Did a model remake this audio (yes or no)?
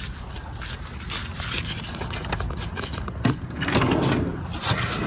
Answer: no